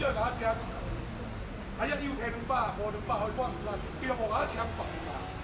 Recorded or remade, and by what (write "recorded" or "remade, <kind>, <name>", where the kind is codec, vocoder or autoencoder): recorded